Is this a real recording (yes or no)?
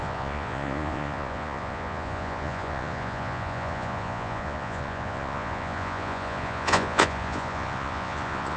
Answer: no